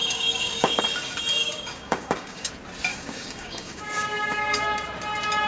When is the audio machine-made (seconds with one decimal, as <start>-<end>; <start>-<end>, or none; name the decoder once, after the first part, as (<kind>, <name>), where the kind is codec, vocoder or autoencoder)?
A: 0.0-0.8 (codec, DAC); 1.4-2.5; 2.9-4.6